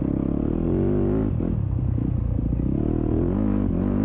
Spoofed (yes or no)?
no